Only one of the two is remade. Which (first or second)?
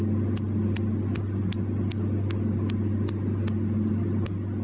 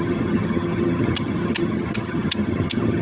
second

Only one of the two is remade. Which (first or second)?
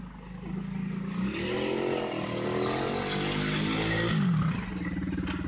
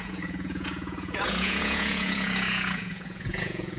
second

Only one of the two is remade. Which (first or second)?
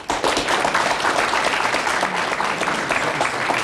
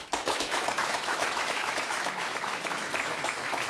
second